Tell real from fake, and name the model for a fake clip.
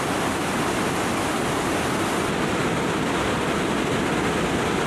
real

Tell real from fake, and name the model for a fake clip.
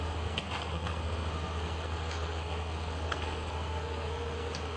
fake, codec, SNAC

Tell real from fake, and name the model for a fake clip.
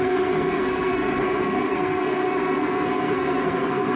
fake, codec, SNAC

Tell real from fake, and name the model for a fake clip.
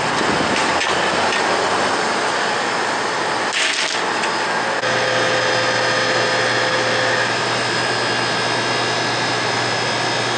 real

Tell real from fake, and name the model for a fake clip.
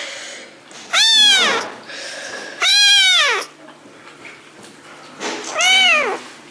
real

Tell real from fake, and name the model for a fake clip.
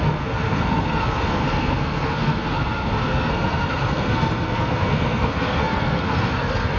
fake, codec, SNAC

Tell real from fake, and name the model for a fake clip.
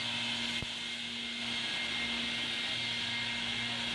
real